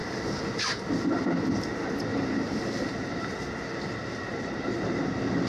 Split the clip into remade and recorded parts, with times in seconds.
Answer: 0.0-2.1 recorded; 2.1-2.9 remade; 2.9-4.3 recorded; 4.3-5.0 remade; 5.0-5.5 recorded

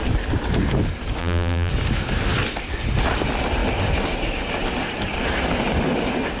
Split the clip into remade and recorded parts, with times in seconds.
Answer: 0.0-1.2 recorded; 1.2-1.7 remade; 1.7-6.4 recorded

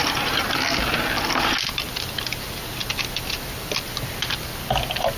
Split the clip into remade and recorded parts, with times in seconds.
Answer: 0.0-0.5 remade; 0.5-5.2 recorded

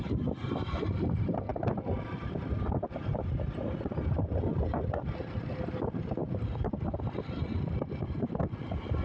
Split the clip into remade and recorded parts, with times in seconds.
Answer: 0.0-1.5 recorded; 1.5-2.3 remade; 2.3-9.0 recorded

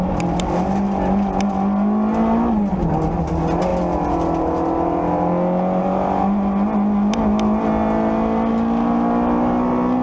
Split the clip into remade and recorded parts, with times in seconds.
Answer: 0.0-10.0 recorded

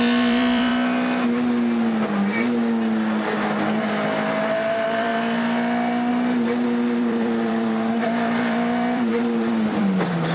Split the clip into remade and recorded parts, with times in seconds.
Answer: 0.0-0.7 remade; 0.7-4.4 recorded; 4.4-5.1 remade; 5.1-6.1 recorded; 6.1-10.3 remade